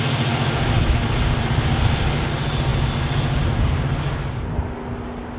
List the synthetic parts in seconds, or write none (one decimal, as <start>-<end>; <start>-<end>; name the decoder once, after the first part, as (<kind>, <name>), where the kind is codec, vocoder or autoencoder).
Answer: none